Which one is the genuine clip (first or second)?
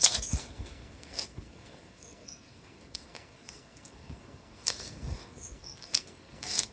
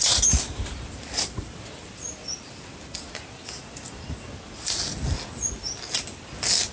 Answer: second